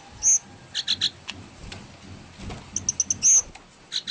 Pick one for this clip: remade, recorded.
recorded